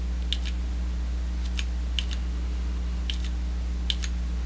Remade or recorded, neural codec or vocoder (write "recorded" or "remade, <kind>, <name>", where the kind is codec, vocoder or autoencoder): recorded